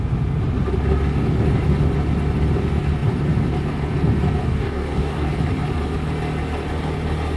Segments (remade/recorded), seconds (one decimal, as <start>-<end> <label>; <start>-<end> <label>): 0.0-4.4 recorded; 4.4-5.3 remade; 5.3-7.4 recorded